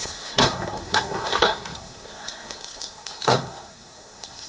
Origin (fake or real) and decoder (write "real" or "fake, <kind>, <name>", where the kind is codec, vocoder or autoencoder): fake, codec, SNAC